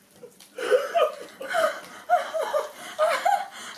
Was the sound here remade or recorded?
recorded